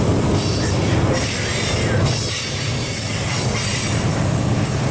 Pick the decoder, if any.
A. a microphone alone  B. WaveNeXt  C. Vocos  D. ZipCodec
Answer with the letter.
A